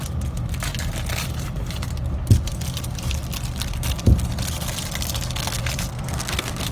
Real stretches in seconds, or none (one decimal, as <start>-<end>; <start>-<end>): 0.0-5.9